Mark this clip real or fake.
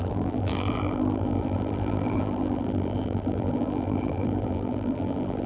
fake